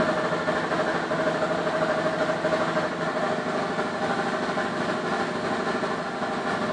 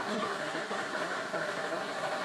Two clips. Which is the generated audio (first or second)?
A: second